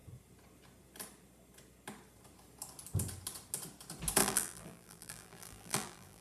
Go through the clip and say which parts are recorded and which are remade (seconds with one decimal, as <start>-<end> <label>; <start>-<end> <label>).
0.0-4.2 recorded; 4.2-6.2 remade